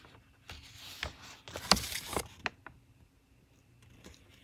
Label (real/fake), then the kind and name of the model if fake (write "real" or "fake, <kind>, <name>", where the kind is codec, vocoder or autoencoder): real